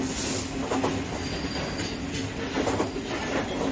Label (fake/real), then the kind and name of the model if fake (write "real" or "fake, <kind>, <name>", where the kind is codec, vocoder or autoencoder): real